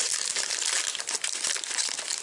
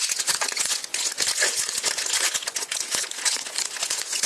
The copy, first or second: second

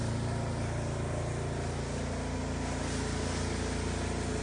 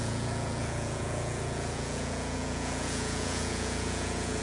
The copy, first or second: second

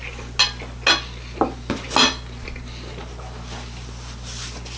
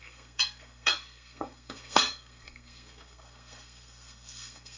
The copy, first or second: second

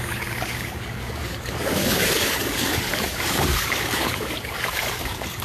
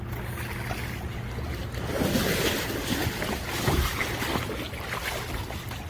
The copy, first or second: first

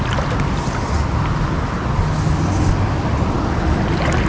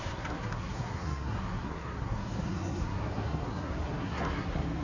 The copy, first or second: second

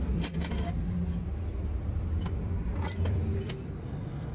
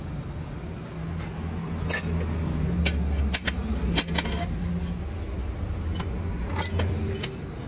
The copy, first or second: first